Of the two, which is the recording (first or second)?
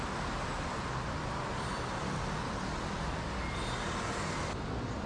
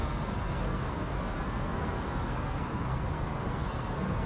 first